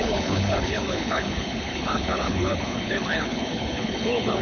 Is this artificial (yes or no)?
yes